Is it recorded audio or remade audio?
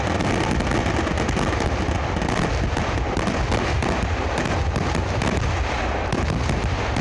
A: recorded